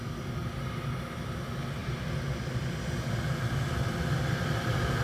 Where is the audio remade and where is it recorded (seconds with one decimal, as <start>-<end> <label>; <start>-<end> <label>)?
0.0-1.8 recorded; 1.8-5.0 remade